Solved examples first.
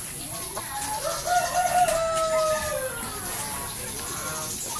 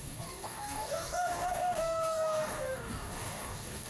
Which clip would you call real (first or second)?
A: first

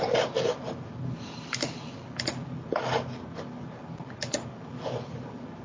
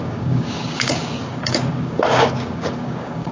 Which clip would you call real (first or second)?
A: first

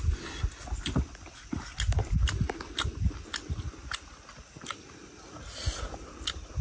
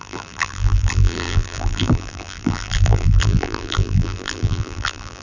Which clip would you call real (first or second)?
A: first